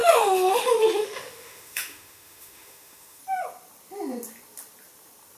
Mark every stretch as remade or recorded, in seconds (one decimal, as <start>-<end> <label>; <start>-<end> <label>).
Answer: 0.0-3.2 remade; 3.2-5.4 recorded